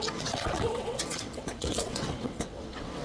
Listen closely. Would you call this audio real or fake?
fake